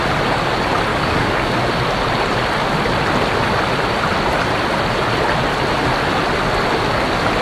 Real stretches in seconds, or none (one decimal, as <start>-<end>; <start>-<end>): 0.0-0.9; 1.7-7.4